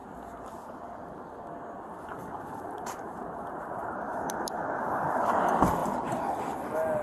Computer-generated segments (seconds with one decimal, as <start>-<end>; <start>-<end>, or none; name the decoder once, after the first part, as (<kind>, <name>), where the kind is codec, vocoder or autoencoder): 2.2-4.2 (vocoder, BigVGAN v2)